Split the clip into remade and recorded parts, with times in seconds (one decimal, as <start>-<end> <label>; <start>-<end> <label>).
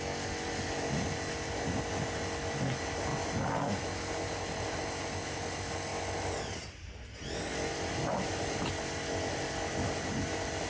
0.0-10.7 recorded